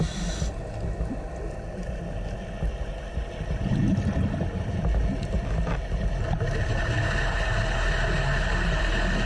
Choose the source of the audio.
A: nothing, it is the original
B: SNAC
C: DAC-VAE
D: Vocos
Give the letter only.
A